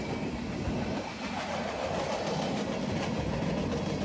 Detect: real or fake real